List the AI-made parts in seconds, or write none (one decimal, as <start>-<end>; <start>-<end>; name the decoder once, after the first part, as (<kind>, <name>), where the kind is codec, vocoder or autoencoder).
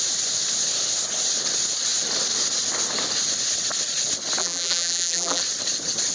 4.4-5.4 (vocoder, BigVGAN v2)